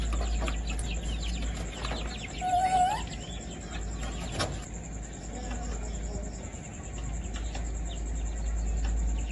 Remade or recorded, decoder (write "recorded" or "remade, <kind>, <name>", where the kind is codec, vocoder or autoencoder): recorded